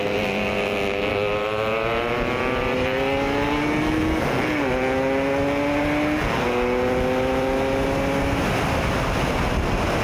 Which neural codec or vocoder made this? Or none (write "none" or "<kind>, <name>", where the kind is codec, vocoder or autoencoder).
none